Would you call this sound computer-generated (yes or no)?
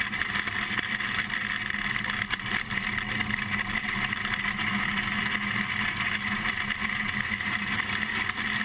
no